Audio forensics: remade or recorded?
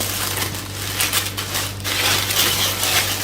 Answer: recorded